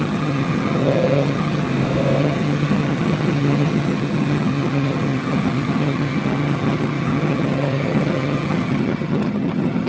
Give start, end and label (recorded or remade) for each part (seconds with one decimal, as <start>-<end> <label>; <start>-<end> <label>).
0.0-1.7 remade; 1.7-2.2 recorded; 2.2-9.9 remade